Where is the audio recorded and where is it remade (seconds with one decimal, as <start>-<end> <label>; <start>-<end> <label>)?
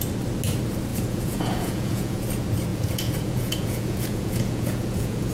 0.0-0.9 recorded; 0.9-2.2 remade; 2.2-2.7 recorded; 2.7-5.3 remade